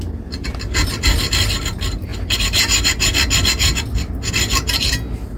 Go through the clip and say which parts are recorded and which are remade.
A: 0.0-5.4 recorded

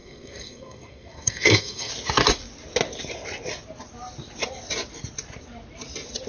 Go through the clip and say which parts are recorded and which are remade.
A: 0.0-1.9 remade; 1.9-6.3 recorded